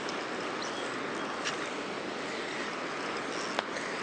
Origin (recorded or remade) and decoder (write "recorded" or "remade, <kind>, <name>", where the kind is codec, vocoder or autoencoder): recorded